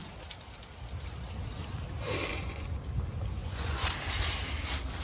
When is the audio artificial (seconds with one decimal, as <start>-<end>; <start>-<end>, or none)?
2.3-2.8; 3.4-3.9